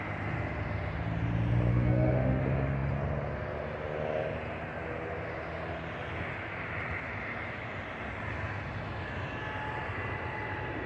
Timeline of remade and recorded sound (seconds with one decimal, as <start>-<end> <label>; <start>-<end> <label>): 0.0-1.7 recorded; 1.7-2.4 remade; 2.4-10.9 recorded